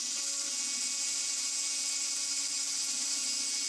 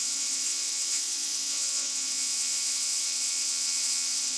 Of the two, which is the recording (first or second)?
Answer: first